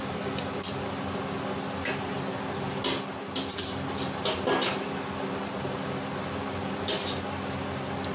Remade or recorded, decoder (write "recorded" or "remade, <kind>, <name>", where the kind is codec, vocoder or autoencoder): recorded